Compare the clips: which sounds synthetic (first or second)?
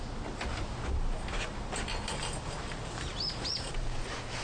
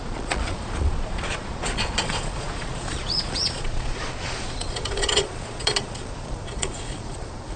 second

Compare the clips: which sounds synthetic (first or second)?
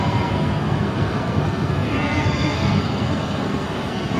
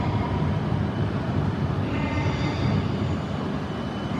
first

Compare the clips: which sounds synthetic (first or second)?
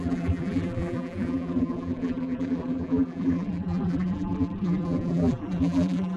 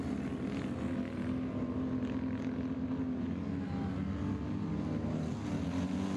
first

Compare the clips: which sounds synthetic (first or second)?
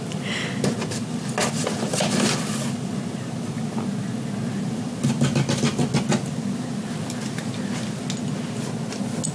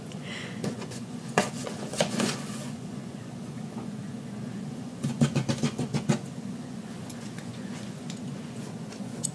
second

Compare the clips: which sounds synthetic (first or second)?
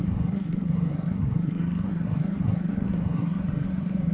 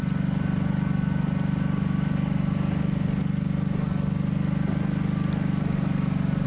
first